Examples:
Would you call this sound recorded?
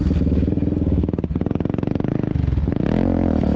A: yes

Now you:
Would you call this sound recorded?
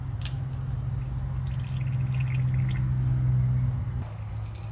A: yes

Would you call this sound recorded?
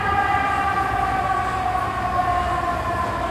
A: yes